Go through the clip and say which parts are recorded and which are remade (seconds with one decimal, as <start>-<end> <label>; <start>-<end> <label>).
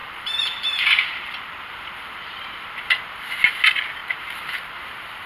0.0-2.7 remade; 2.7-4.0 recorded; 4.0-4.8 remade; 4.8-5.3 recorded